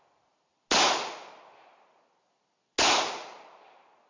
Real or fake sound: real